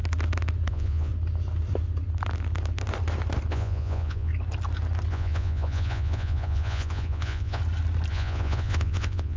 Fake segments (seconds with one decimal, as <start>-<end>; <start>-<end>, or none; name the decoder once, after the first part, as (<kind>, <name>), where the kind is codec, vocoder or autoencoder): 0.7-1.1 (vocoder, Vocos); 3.5-4.3; 5.1-7.6; 8.1-9.4